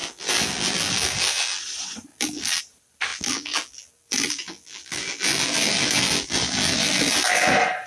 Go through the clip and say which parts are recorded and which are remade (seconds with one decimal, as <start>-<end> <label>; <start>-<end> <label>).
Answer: 0.0-1.6 remade; 1.6-2.1 recorded; 2.1-2.6 remade; 2.6-3.1 recorded; 3.1-7.5 remade; 7.5-7.9 recorded